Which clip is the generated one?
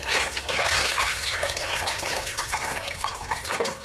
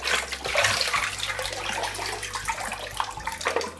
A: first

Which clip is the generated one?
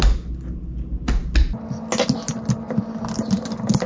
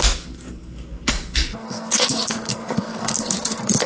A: second